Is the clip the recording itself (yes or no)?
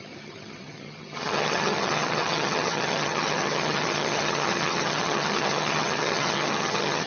no